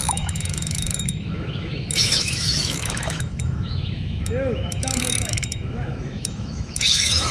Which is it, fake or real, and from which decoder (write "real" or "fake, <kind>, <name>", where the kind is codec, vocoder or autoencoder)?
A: fake, autoencoder, DAC-VAE